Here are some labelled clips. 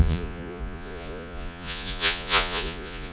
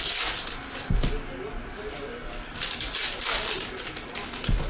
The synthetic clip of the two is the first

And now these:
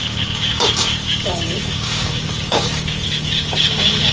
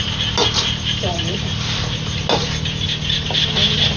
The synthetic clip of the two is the first